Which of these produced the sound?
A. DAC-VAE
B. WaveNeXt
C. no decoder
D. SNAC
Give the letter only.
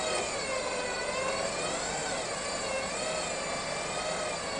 C